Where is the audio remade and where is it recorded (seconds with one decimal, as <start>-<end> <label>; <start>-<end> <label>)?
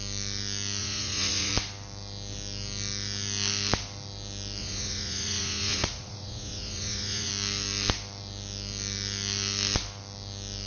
0.0-0.8 recorded; 0.8-1.5 remade; 1.5-4.6 recorded; 4.6-7.3 remade; 7.3-10.7 recorded